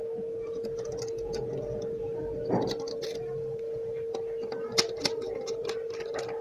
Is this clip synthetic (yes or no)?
no